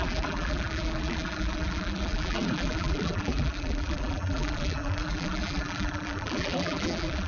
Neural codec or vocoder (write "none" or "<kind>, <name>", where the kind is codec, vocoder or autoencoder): vocoder, BigVGAN v2